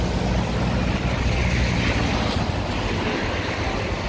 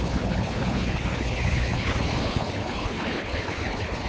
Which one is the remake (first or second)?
second